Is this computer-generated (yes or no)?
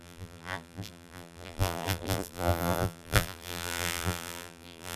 yes